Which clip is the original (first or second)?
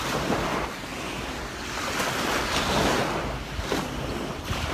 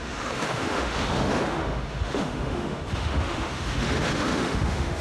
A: first